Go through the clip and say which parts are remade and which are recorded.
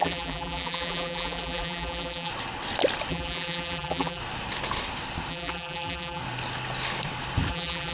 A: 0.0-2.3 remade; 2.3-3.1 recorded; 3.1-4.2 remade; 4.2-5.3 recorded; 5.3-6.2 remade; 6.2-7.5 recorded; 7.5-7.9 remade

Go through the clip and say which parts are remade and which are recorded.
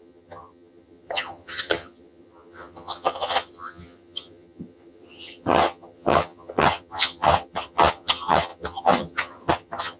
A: 0.0-10.0 remade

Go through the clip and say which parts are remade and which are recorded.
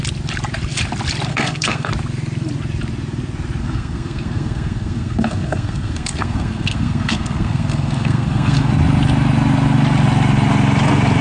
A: 0.0-1.3 recorded; 1.3-1.9 remade; 1.9-3.6 recorded; 3.6-8.7 remade; 8.7-11.2 recorded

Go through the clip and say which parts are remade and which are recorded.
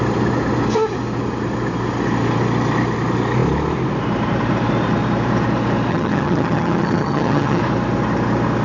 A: 0.0-5.9 recorded; 5.9-7.6 remade; 7.6-8.6 recorded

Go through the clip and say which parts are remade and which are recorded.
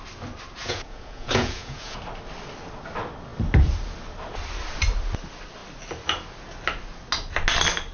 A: 0.0-0.6 recorded; 0.6-2.0 remade; 2.0-7.9 recorded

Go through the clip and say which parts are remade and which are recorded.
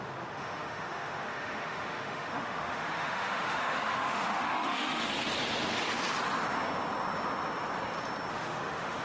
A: 0.0-5.1 remade; 5.1-8.3 recorded; 8.3-9.0 remade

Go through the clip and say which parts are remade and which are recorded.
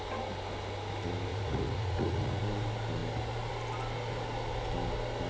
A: 0.0-1.3 recorded; 1.3-2.4 remade; 2.4-5.3 recorded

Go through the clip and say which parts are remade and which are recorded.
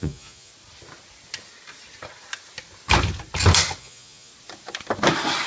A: 0.0-0.5 remade; 0.5-3.8 recorded; 3.8-4.3 remade; 4.3-5.5 recorded